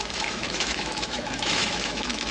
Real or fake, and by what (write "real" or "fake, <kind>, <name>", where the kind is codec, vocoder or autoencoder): fake, autoencoder, DAC-VAE